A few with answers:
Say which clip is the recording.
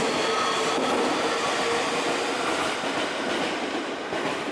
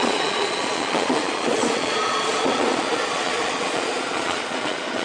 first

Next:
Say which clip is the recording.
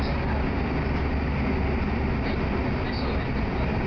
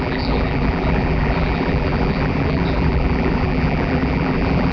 first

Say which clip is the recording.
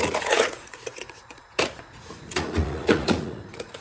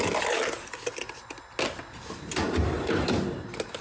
second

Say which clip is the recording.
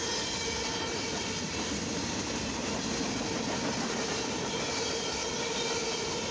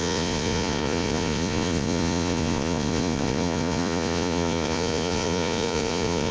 first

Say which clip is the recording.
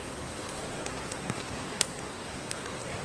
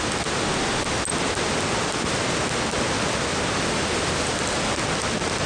second